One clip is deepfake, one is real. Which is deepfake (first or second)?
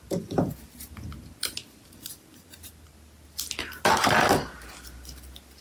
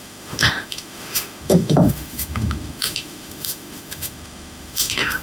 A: second